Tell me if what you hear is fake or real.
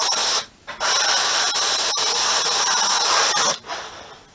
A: real